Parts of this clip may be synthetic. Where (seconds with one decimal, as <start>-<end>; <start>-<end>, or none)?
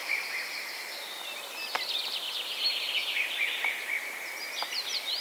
0.0-0.7